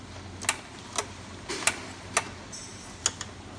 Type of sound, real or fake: real